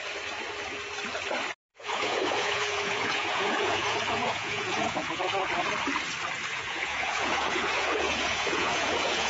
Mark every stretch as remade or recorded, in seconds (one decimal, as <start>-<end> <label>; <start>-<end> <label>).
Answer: 0.0-1.7 recorded; 1.7-5.2 remade; 5.2-6.5 recorded; 6.5-9.3 remade